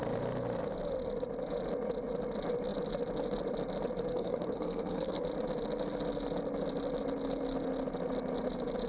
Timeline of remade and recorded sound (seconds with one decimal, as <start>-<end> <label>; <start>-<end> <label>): 0.0-4.1 recorded; 4.1-5.3 remade; 5.3-8.9 recorded